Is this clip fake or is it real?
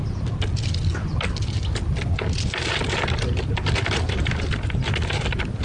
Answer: real